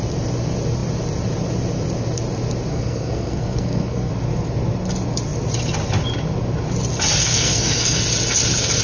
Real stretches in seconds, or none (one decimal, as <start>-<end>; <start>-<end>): 0.0-2.7; 4.1-7.2; 8.0-8.8